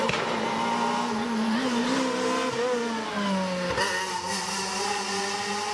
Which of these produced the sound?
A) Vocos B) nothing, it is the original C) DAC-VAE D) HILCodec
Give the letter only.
B